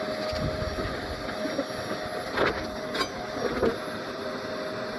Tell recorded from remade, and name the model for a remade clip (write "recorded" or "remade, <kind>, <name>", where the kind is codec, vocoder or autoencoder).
recorded